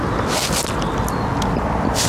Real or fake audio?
real